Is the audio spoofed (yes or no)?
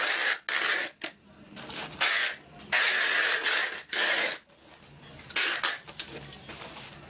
no